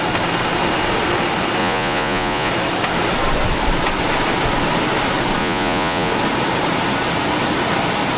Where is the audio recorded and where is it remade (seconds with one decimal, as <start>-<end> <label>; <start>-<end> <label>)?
0.0-1.6 recorded; 1.6-2.5 remade; 2.5-5.4 recorded; 5.4-6.1 remade; 6.1-8.2 recorded